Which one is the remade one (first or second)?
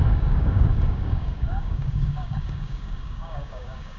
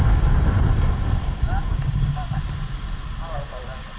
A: first